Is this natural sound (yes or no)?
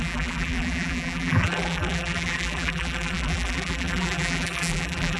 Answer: no